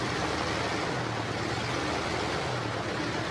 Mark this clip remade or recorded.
recorded